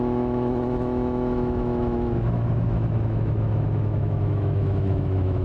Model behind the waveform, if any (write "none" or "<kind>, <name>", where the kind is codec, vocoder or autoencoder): autoencoder, DAC-VAE